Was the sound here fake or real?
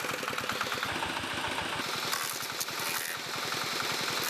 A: real